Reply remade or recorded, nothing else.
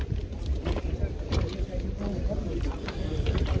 recorded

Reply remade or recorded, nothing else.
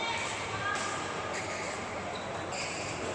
remade